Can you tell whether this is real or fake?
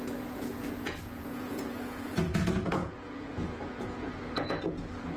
fake